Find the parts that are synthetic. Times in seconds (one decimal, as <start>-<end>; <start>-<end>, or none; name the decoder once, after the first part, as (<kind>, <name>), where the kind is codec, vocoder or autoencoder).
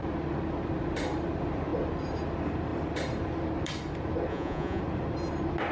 4.3-4.8 (vocoder, Vocos)